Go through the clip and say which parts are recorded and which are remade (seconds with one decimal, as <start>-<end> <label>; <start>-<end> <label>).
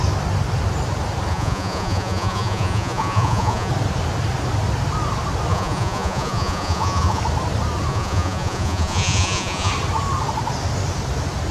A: 0.0-1.3 recorded; 1.3-3.7 remade; 3.7-5.5 recorded; 5.5-7.2 remade; 7.2-7.9 recorded; 7.9-9.7 remade; 9.7-11.5 recorded